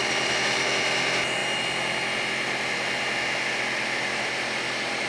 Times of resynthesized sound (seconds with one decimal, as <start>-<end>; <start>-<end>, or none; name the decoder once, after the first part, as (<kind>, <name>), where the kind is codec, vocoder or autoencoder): none